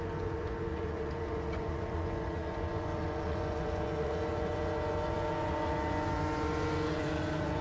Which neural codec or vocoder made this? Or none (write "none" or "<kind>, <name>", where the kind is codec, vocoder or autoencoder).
vocoder, Vocos